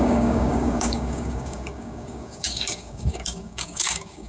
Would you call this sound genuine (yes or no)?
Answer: no